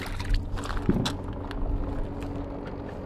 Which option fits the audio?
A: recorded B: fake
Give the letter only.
A